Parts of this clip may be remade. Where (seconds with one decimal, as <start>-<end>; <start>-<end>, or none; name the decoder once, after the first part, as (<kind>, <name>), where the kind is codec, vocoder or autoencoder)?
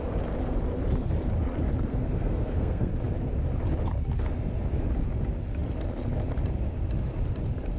1.9-2.9 (codec, SNAC)